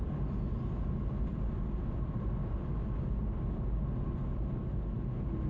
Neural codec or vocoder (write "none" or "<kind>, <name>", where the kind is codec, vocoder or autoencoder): none